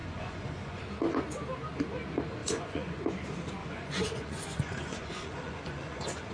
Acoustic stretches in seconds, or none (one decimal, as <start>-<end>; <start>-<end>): 0.8-2.4; 3.0-3.6